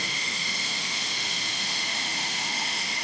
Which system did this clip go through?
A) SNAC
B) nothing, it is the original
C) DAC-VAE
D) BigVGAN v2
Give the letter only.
C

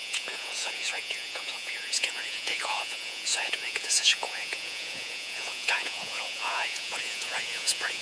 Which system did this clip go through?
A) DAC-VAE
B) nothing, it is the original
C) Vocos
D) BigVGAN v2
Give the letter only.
C